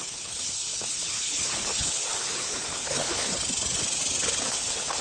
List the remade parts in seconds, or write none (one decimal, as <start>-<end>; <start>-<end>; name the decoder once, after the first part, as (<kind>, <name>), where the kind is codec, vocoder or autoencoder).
0.0-3.3 (codec, HILCodec); 4.5-5.0